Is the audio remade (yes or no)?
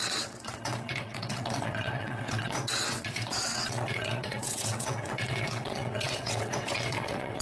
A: yes